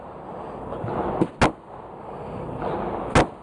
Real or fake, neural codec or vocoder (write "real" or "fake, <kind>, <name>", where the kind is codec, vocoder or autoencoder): real